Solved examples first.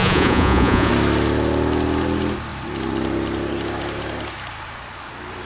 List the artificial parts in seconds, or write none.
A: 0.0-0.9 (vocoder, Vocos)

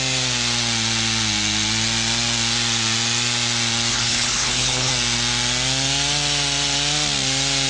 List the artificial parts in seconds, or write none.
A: 3.9-4.9 (codec, HILCodec)

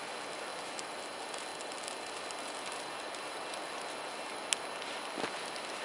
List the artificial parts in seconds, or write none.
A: none

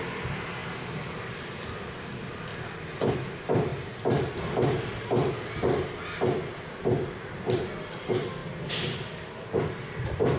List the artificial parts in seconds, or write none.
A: 0.0-0.6 (vocoder, BigVGAN v2); 1.5-2.5; 3.1-3.7; 7.2-8.4; 9.7-10.4

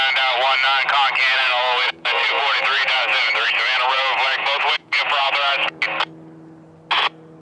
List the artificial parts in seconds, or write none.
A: 1.4-5.8 (vocoder, Vocos)

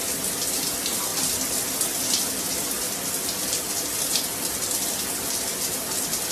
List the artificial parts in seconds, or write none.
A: none